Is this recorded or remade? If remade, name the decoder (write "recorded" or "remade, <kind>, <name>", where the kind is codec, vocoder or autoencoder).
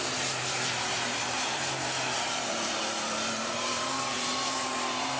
remade, vocoder, BigVGAN v2